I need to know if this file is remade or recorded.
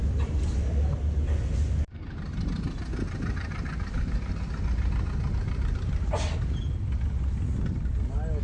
recorded